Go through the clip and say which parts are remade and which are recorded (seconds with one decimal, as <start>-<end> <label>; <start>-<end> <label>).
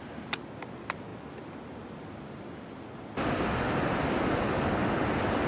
0.0-5.5 recorded